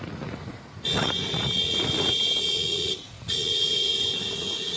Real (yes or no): no